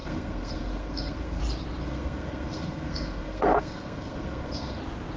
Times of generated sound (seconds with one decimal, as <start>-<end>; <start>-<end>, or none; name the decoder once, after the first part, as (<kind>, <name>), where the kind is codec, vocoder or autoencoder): 0.0-1.4 (codec, SNAC); 1.8-4.8